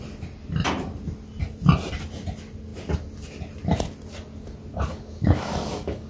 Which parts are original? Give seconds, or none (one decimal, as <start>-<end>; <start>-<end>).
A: 0.0-4.7